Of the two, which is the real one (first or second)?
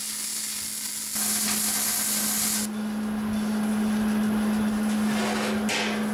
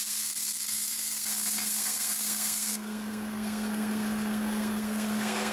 first